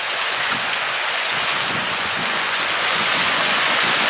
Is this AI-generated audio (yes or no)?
yes